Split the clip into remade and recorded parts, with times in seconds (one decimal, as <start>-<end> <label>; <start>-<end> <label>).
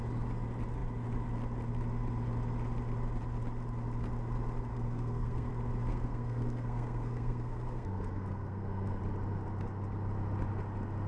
0.0-4.7 recorded; 4.7-5.5 remade; 5.5-5.9 recorded; 5.9-9.0 remade; 9.0-11.1 recorded